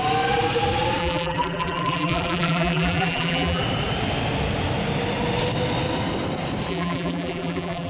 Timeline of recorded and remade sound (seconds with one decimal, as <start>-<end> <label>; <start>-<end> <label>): 0.0-1.0 recorded; 1.0-3.6 remade; 3.6-6.7 recorded; 6.7-7.9 remade